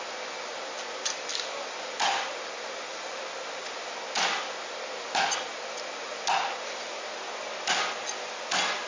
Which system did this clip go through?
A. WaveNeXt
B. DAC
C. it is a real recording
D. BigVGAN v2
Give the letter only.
C